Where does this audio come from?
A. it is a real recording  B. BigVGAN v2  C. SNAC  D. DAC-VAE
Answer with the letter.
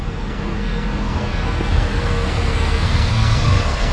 C